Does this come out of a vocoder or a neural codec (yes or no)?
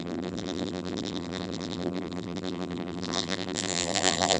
yes